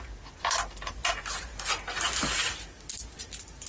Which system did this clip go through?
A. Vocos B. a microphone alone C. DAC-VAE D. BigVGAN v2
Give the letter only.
B